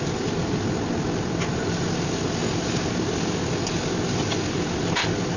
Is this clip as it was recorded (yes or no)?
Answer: yes